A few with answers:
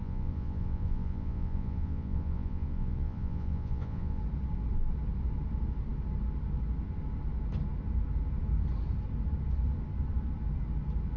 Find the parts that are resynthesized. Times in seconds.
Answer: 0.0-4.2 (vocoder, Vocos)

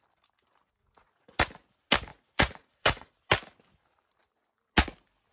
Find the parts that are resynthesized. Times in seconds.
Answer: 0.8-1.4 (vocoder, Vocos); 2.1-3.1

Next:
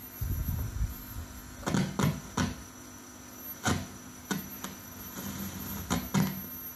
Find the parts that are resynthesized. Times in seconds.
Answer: none

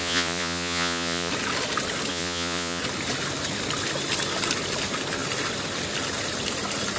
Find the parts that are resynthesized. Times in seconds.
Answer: 0.0-1.3 (vocoder, Vocos); 2.1-2.8

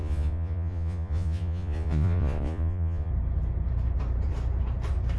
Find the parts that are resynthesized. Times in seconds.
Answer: 0.0-3.1 (vocoder, Vocos)

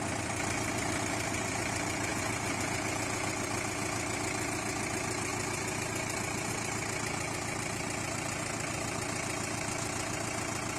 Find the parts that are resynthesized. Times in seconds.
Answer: 2.1-3.3 (vocoder, Vocos)

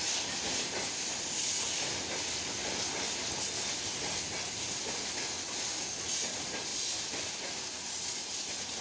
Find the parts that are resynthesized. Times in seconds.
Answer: none